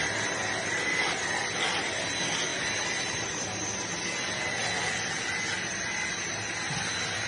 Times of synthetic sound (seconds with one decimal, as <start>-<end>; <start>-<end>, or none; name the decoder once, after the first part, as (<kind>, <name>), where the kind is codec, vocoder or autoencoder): none